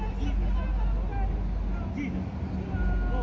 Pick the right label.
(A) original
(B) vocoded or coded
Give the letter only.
A